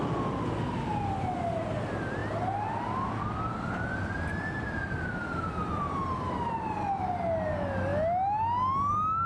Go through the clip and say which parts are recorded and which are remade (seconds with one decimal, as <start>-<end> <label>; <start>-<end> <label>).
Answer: 0.0-9.3 recorded